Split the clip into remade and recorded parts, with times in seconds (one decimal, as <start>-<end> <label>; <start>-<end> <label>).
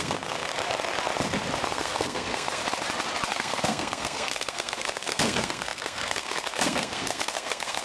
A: 0.0-0.5 remade; 0.5-1.7 recorded; 1.7-2.6 remade; 2.6-3.3 recorded; 3.3-7.8 remade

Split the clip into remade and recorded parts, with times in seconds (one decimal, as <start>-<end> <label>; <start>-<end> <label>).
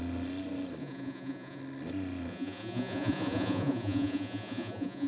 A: 0.0-0.8 recorded; 0.8-1.6 remade; 1.6-2.3 recorded; 2.3-5.1 remade